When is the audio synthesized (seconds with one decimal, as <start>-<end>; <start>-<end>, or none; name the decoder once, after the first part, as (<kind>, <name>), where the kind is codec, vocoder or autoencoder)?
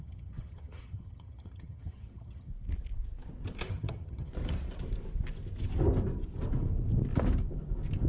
0.0-2.5 (vocoder, HiFi-GAN); 3.7-4.3